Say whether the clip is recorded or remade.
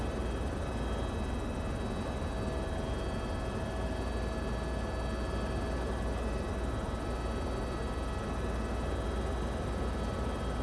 recorded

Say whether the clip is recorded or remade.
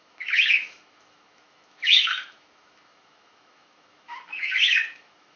remade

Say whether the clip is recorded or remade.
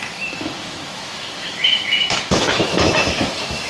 remade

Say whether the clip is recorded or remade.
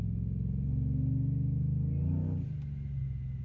recorded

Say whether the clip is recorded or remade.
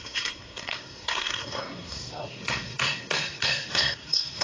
remade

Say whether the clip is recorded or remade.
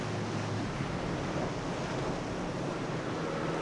recorded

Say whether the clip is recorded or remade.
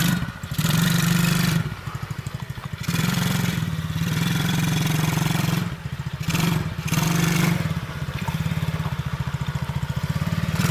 remade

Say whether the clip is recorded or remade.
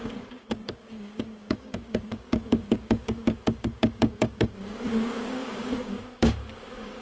remade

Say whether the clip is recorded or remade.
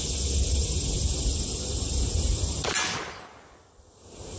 recorded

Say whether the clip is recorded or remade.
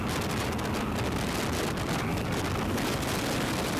recorded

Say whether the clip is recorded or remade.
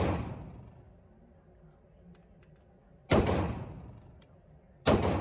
recorded